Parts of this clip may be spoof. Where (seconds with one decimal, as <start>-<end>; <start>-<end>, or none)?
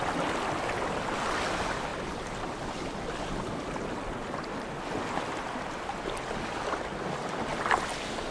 none